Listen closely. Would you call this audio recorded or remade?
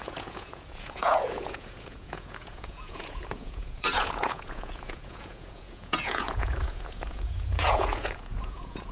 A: remade